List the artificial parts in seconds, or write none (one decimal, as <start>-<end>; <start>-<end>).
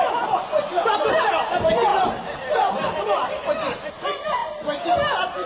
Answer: 0.7-1.3; 1.9-3.9